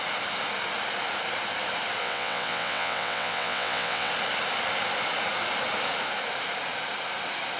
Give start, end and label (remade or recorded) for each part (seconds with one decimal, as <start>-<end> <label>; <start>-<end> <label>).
0.0-2.0 recorded; 2.0-4.1 remade; 4.1-7.6 recorded